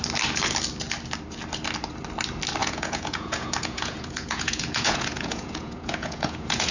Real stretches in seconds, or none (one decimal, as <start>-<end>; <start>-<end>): 0.0-2.6